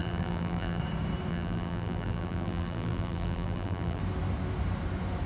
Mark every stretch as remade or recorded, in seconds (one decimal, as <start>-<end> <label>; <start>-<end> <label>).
0.0-0.8 remade; 0.8-1.3 recorded; 1.3-4.0 remade; 4.0-5.3 recorded